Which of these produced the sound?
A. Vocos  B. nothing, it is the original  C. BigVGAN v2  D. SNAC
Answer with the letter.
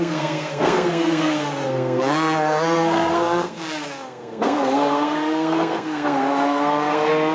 D